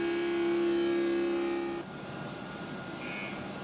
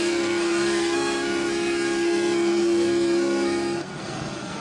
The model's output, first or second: second